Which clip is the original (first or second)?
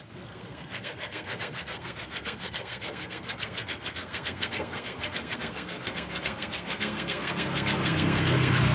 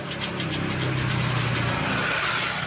second